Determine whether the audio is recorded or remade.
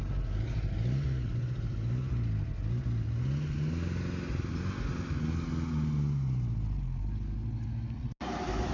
recorded